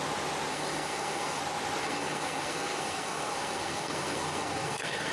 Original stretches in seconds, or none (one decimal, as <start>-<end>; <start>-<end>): 0.0-0.5; 1.4-1.8